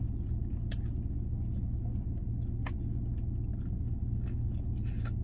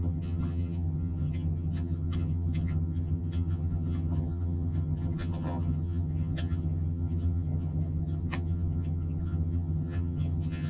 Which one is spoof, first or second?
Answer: second